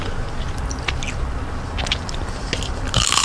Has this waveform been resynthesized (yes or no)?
no